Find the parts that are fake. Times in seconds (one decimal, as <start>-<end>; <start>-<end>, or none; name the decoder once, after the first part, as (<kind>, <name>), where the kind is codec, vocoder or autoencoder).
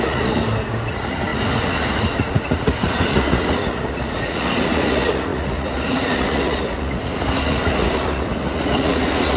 0.0-0.4 (vocoder, Vocos); 0.9-9.4